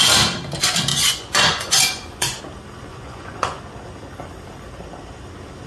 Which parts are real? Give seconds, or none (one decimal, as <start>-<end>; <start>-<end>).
0.0-0.9; 2.4-2.9; 3.6-5.7